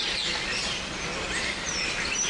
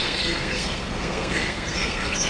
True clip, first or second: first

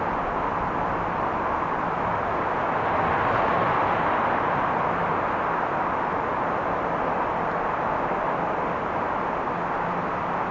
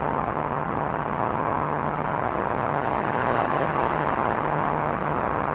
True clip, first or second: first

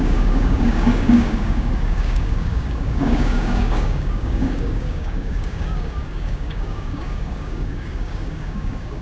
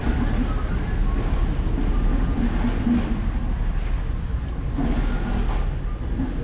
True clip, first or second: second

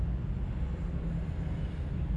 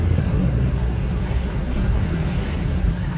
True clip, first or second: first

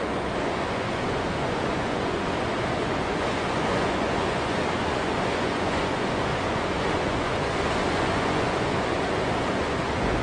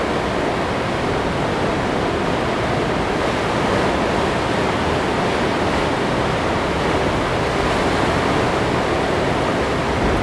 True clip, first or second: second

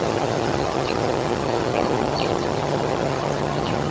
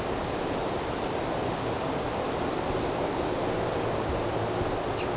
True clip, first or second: second